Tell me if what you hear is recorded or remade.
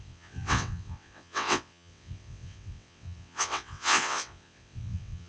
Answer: remade